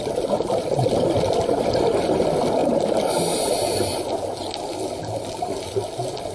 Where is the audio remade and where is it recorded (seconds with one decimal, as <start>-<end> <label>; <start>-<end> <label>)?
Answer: 0.0-6.3 recorded